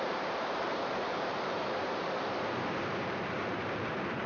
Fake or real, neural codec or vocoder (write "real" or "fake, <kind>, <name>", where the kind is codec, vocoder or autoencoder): fake, vocoder, BigVGAN v2